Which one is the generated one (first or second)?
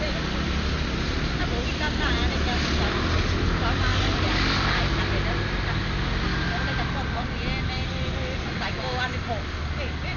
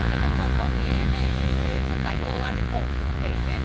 second